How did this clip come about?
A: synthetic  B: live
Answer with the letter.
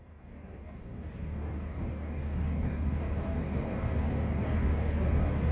A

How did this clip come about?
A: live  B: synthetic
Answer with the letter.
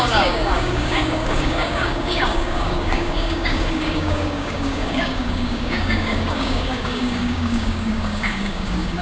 B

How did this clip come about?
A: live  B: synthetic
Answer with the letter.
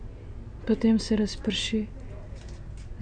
A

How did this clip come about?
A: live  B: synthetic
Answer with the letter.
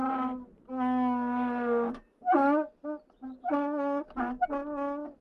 A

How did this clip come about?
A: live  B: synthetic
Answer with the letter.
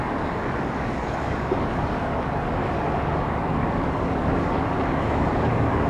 B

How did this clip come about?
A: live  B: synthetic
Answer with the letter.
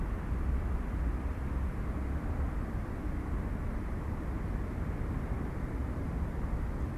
A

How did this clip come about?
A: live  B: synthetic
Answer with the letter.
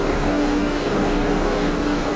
B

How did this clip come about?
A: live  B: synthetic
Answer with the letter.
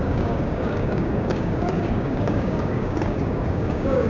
B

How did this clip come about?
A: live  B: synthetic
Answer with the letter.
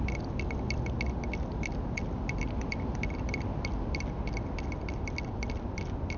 A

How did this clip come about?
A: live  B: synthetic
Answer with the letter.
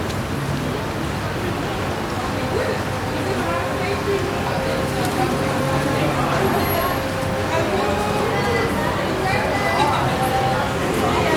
A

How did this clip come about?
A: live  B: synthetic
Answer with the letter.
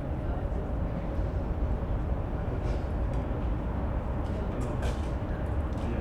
A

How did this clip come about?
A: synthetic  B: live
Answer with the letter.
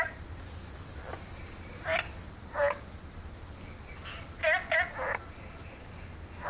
B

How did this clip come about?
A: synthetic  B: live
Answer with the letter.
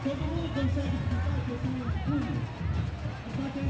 B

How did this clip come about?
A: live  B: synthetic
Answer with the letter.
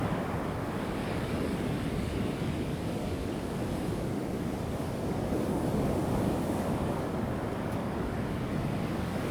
B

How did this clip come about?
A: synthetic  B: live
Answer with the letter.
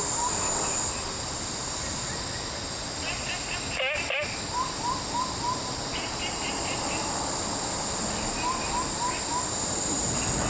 B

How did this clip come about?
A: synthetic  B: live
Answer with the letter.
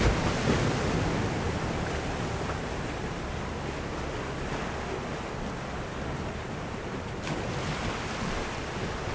B